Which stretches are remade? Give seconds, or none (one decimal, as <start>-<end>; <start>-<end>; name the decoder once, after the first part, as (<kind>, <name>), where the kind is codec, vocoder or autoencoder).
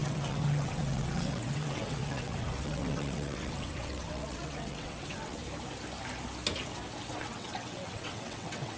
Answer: 0.0-5.4 (vocoder, WaveNeXt); 7.2-8.8